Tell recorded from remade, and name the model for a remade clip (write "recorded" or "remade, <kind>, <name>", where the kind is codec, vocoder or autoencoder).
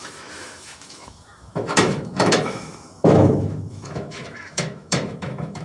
remade, autoencoder, DAC-VAE